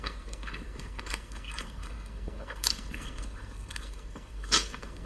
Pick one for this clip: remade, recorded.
remade